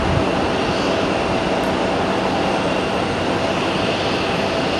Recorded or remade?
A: recorded